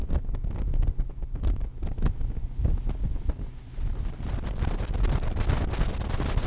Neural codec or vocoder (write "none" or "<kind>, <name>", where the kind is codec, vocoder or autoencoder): none